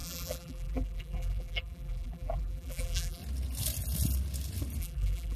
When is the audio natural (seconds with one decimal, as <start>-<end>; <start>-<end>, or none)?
3.2-4.8